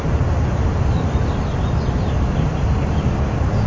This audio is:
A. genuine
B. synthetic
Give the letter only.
A